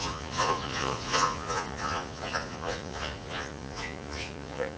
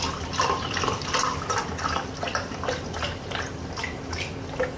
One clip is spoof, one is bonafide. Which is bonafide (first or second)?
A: second